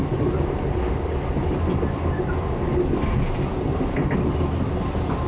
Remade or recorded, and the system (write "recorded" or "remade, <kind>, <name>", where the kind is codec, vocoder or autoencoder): recorded